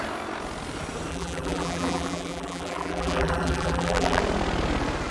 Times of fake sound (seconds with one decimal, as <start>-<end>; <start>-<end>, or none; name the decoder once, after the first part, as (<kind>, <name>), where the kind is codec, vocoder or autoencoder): 1.1-4.2 (vocoder, BigVGAN v2)